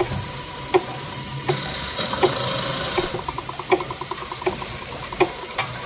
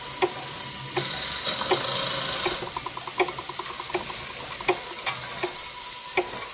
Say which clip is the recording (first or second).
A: second